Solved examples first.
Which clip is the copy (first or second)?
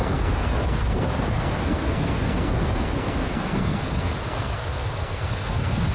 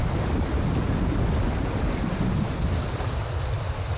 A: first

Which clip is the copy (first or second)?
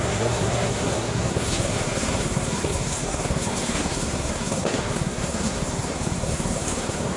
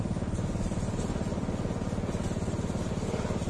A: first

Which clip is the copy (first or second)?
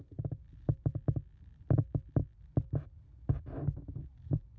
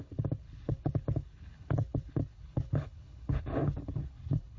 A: second